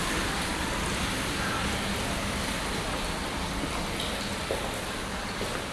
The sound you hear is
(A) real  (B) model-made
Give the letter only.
A